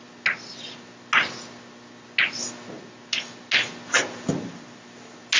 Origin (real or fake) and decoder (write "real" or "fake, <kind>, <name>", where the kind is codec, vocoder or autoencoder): real